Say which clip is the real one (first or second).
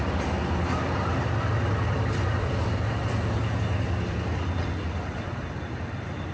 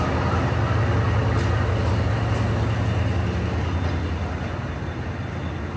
second